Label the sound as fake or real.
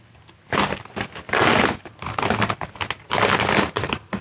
real